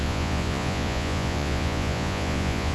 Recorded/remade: remade